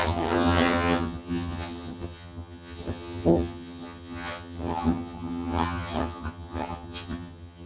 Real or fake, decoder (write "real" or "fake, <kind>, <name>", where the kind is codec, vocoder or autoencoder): fake, vocoder, HiFi-GAN